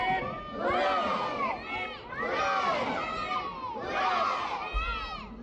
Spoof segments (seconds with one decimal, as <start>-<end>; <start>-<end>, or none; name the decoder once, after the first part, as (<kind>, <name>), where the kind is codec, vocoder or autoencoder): none